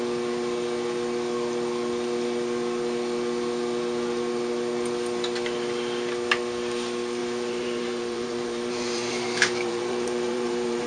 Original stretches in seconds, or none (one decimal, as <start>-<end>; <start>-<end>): 0.0-7.2